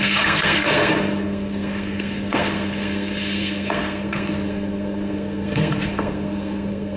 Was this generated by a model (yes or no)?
yes